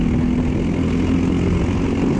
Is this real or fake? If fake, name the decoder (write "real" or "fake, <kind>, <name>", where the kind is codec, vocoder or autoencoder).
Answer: real